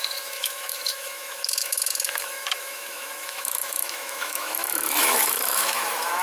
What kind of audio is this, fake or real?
fake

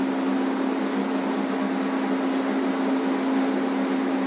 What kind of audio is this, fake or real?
real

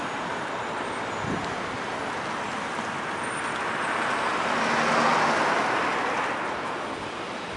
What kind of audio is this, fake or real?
real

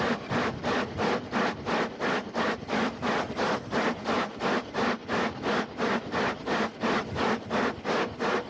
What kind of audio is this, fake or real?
real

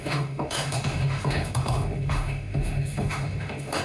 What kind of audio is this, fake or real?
fake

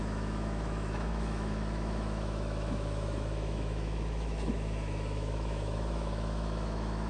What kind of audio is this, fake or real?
fake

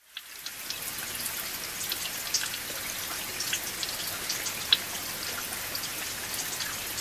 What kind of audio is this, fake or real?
real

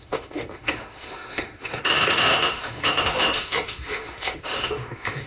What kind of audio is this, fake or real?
fake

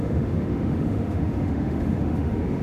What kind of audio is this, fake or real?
fake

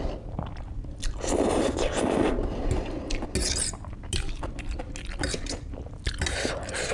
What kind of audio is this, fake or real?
real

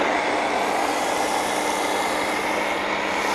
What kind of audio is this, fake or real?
real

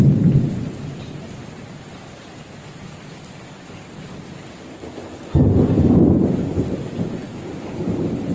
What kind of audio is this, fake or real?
real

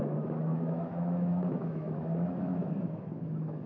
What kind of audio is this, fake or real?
fake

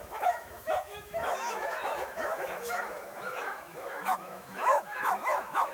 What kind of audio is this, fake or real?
fake